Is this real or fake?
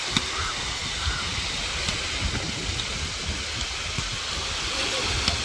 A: real